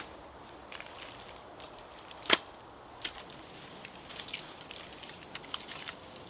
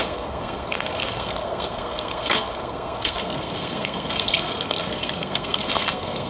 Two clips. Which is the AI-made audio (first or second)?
second